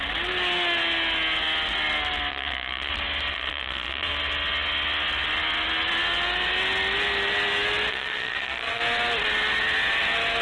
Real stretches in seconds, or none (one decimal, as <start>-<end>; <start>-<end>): 0.0-2.3; 2.9-3.3; 4.1-7.9; 8.8-10.4